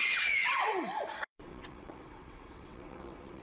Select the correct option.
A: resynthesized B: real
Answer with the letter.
A